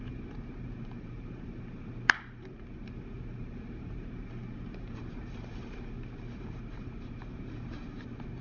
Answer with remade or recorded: remade